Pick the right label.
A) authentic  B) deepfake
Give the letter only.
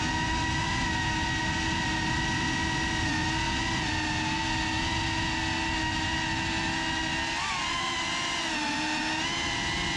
A